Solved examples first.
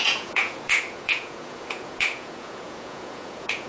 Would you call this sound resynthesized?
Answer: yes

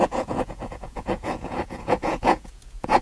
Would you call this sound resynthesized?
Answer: yes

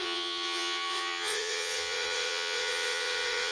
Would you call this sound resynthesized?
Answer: yes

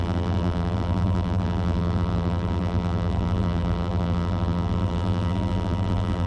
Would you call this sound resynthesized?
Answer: yes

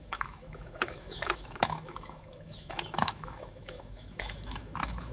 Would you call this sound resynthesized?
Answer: yes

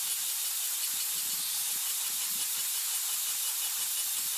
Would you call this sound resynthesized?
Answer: no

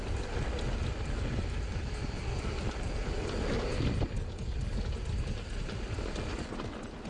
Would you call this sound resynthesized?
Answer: no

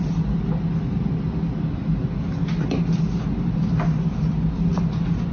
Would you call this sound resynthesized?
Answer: no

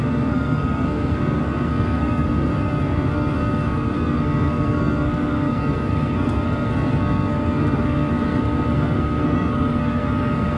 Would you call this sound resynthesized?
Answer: yes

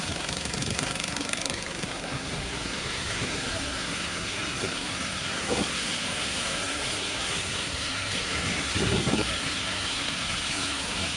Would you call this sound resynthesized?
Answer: yes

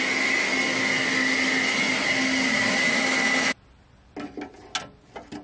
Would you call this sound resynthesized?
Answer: no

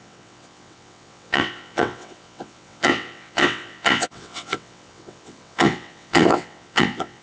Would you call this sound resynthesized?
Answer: yes